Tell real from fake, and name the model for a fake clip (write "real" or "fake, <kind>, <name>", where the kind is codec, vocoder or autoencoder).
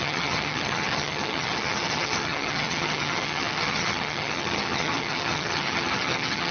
fake, vocoder, HiFi-GAN